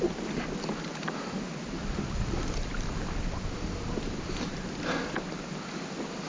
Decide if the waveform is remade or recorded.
recorded